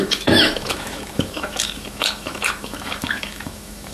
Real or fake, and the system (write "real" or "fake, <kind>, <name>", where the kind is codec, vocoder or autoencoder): fake, autoencoder, DAC-VAE